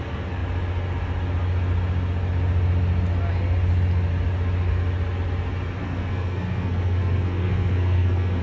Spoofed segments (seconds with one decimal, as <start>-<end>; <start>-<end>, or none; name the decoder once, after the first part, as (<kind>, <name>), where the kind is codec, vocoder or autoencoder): 5.8-8.4 (codec, SNAC)